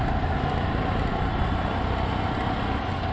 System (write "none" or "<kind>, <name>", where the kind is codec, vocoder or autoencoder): none